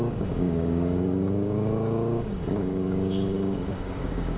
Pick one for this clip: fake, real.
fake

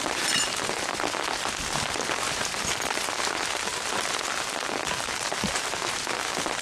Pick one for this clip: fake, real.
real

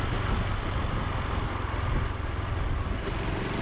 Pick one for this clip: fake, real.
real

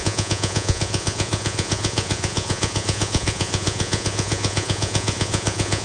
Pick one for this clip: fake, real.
fake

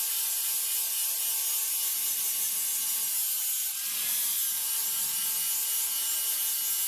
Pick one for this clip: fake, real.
real